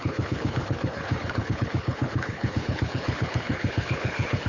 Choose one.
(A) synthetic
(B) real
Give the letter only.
A